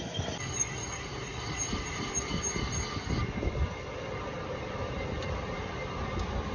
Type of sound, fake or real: real